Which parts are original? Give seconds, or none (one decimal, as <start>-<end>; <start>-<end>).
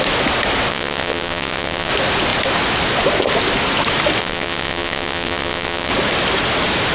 0.0-0.7; 1.9-4.2; 5.9-6.9